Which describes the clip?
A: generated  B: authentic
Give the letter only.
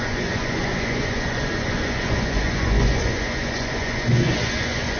A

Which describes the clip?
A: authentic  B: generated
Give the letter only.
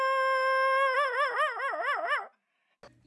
A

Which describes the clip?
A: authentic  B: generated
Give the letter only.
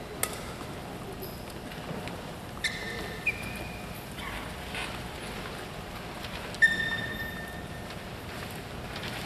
A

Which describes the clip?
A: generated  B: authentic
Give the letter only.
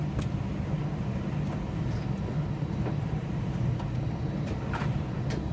B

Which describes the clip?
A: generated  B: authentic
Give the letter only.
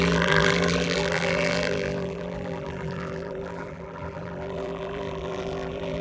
A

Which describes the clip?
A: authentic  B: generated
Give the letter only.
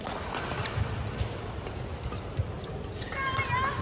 A